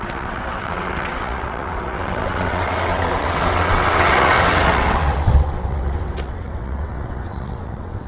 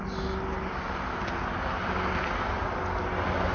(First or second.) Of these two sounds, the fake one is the first